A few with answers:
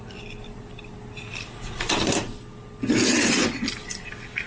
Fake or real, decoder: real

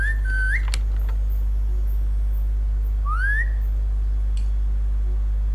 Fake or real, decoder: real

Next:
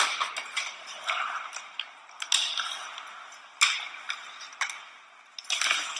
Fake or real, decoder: real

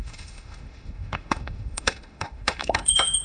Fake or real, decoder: fake, autoencoder, DAC-VAE